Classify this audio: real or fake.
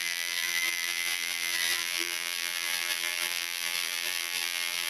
fake